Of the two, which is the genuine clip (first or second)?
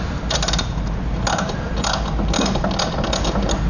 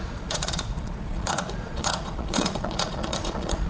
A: first